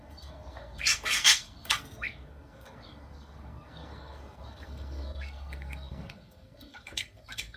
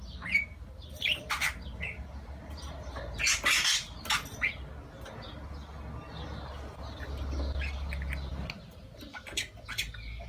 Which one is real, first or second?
second